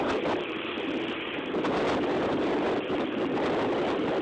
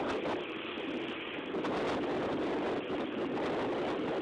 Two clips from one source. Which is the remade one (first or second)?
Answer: first